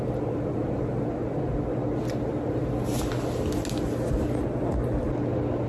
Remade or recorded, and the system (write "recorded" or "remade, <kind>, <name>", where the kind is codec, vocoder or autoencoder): recorded